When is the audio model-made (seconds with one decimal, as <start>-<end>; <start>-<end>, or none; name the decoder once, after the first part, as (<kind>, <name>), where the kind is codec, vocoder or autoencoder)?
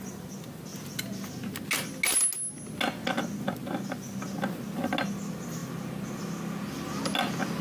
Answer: none